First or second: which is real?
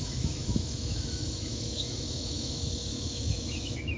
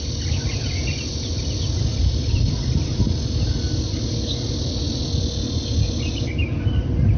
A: second